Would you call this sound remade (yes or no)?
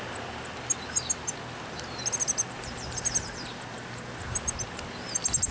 no